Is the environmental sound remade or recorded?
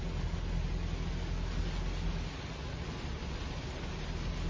recorded